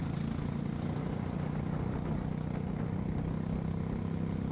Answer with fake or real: real